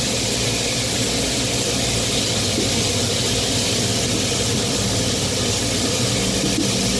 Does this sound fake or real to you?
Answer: real